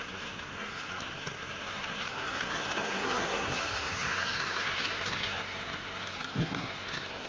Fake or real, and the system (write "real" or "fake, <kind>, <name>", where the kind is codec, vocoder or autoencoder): fake, codec, SNAC